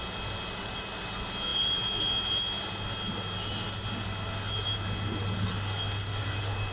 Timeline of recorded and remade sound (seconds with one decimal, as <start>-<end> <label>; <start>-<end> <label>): 0.0-6.7 recorded